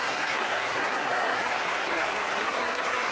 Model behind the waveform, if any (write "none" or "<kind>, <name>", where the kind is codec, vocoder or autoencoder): codec, SNAC